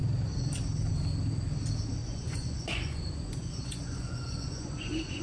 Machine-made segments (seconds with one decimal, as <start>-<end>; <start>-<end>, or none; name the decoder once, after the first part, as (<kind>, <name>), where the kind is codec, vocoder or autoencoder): 2.0-5.2 (vocoder, Vocos)